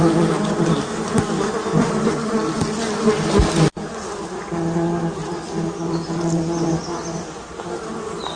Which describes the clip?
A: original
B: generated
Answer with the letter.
A